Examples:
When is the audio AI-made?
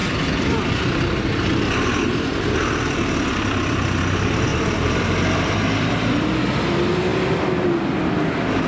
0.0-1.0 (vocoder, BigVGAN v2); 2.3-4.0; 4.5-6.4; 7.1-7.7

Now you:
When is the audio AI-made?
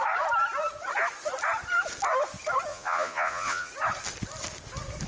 2.7-3.7 (vocoder, Vocos)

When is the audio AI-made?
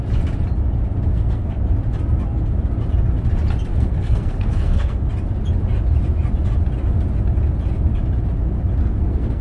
1.1-1.6 (codec, SNAC); 3.7-5.0; 8.8-9.4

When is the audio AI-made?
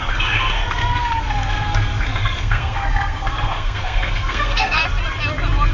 0.0-4.8 (codec, SNAC)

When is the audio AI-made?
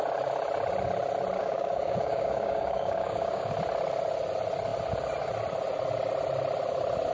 1.4-3.5 (codec, DAC)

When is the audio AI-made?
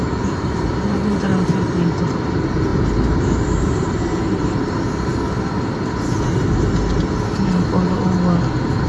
0.0-1.3 (vocoder, BigVGAN v2); 2.0-5.1; 8.5-8.9